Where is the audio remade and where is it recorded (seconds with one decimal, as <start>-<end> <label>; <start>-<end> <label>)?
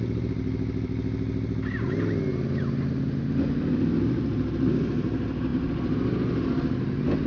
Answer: 0.0-7.3 recorded